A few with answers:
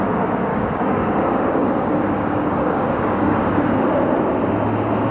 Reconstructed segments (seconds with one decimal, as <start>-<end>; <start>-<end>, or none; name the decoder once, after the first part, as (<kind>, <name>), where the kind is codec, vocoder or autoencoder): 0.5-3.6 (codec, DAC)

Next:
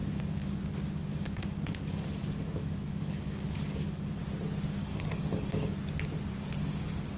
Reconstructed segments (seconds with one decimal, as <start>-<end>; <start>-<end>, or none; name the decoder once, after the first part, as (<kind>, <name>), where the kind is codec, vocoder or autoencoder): 0.0-0.6 (codec, DAC); 1.0-4.2; 4.8-5.7

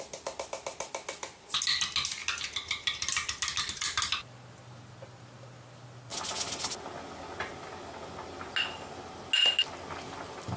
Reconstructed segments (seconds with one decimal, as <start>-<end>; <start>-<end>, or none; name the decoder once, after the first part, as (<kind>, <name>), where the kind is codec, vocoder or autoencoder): none

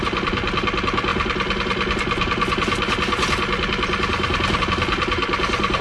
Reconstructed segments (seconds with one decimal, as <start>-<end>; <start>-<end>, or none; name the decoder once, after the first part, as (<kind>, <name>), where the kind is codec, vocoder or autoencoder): none

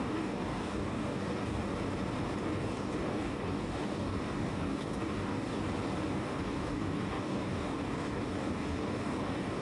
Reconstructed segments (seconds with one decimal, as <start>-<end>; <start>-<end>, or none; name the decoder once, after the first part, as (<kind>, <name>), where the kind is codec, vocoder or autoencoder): 0.0-1.7 (codec, DAC); 2.4-5.6; 6.1-9.6

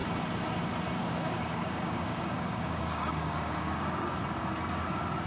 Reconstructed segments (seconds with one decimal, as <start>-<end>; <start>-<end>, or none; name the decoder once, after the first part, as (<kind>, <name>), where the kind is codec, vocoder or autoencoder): 1.0-4.2 (codec, DAC)

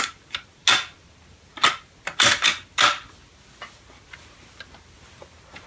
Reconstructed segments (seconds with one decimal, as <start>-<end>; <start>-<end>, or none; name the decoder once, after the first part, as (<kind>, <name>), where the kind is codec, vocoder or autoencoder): none

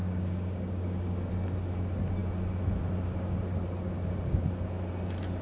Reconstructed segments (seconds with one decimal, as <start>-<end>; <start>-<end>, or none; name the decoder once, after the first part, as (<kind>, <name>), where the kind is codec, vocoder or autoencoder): 0.0-1.3 (codec, DAC)